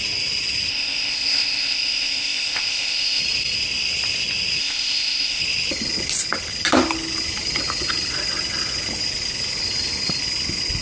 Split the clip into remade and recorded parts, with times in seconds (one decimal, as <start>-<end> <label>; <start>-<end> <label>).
0.0-0.7 recorded; 0.7-3.2 remade; 3.2-4.6 recorded; 4.6-5.4 remade; 5.4-10.8 recorded

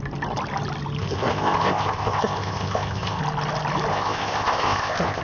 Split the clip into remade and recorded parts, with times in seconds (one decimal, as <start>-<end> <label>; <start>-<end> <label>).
0.0-1.0 recorded; 1.0-3.2 remade; 3.2-3.9 recorded; 3.9-5.2 remade

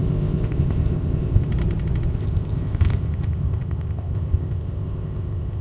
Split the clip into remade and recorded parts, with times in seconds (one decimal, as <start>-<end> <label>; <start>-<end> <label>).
0.0-1.5 remade; 1.5-2.1 recorded; 2.1-5.6 remade